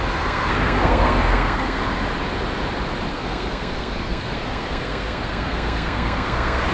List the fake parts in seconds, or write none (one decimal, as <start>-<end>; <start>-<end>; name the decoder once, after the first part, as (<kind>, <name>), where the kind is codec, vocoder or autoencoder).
0.0-1.8 (codec, SNAC); 3.1-6.7